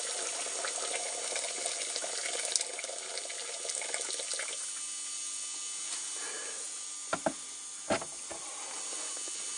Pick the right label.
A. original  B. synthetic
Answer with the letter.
A